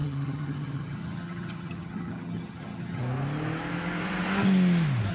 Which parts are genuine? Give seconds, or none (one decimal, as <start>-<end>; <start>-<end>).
3.0-5.1